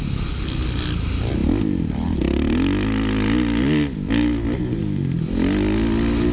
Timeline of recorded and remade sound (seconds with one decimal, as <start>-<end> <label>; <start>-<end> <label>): 0.0-6.3 recorded